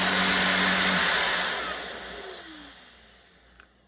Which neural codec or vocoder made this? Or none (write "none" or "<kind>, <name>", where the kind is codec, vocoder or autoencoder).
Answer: none